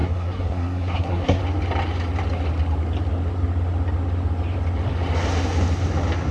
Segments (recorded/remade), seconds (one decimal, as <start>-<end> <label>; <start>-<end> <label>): 0.0-1.4 remade; 1.4-6.3 recorded